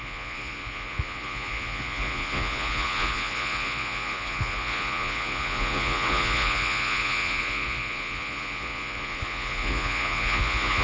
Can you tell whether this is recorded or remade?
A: remade